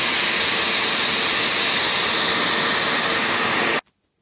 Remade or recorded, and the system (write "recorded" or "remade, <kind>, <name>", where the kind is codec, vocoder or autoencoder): recorded